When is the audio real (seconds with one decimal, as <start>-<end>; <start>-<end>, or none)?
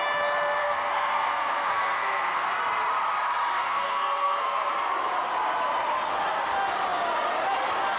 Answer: 0.0-0.6; 2.5-3.5; 4.7-8.0